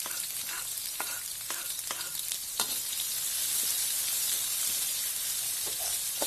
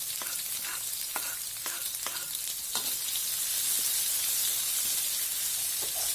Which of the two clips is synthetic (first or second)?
first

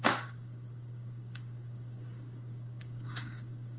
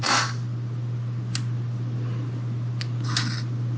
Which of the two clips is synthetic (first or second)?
first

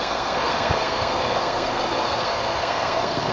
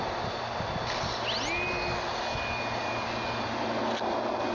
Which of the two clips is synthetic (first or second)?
first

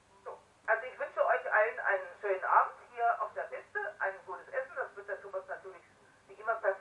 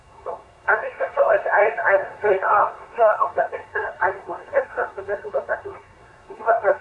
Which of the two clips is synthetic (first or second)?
second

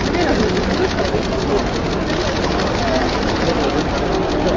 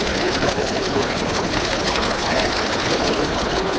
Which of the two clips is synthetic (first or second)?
second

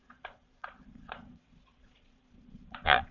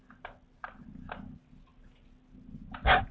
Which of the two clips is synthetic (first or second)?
first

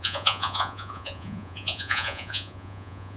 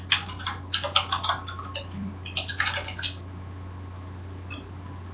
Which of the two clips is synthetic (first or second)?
first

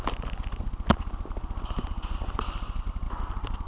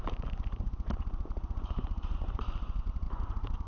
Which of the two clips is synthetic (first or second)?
second